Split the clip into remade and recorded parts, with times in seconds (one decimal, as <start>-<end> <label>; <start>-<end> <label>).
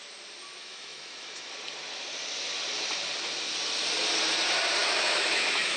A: 0.0-0.6 recorded; 0.6-1.5 remade; 1.5-4.8 recorded; 4.8-5.8 remade